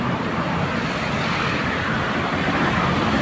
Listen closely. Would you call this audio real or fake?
real